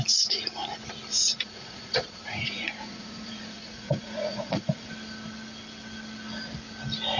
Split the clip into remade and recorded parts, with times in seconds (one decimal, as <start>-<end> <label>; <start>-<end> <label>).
0.0-1.1 recorded; 1.1-4.9 remade; 4.9-7.2 recorded